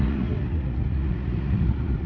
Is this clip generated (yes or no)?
yes